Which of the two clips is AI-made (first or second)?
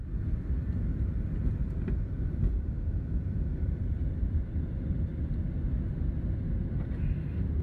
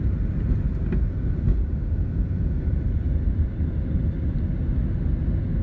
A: first